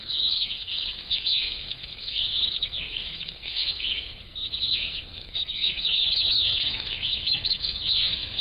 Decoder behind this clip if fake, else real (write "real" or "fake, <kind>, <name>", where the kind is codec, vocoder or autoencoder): fake, codec, SNAC